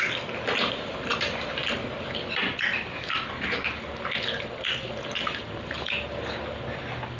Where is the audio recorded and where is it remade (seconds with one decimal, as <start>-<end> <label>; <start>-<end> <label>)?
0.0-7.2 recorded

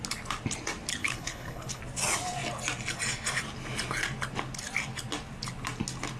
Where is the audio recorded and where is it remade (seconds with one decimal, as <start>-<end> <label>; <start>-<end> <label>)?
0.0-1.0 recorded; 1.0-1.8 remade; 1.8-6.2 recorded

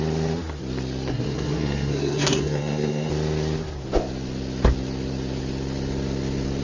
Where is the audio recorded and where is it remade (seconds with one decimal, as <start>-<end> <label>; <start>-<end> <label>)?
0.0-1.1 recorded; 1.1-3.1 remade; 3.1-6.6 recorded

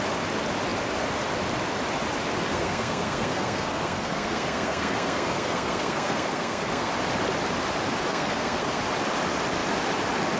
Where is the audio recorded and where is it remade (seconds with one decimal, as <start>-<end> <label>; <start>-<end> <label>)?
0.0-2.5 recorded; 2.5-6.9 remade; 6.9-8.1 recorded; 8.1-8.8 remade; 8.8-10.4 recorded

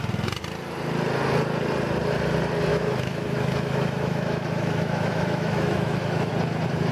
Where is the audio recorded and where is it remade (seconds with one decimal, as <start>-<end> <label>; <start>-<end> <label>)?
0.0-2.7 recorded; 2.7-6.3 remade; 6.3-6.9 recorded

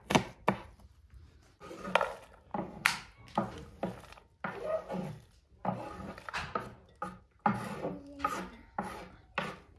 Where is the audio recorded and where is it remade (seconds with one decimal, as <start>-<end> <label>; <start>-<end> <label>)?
0.0-9.8 recorded

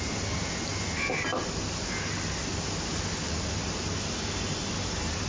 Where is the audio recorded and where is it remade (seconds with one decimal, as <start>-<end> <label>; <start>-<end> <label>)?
0.0-5.3 recorded

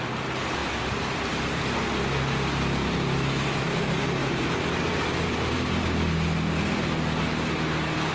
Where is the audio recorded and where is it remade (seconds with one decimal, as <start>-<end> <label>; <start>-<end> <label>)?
0.0-4.2 recorded; 4.2-5.5 remade; 5.5-8.1 recorded